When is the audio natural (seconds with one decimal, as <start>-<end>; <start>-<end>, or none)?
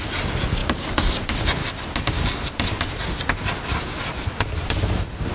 0.0-5.3